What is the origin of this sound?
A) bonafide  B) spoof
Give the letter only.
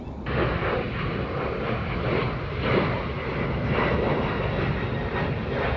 A